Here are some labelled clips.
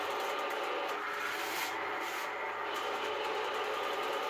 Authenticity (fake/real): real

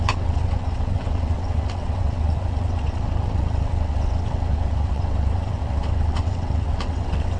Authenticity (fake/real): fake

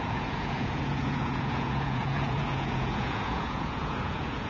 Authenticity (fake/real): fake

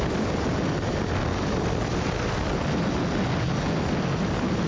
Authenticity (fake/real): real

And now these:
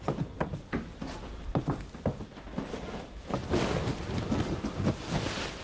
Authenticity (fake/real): real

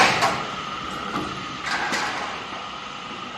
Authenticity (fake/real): fake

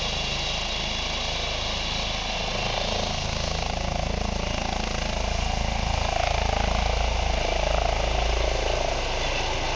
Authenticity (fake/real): real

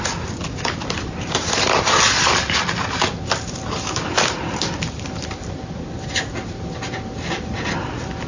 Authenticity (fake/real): real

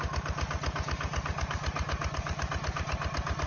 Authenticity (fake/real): real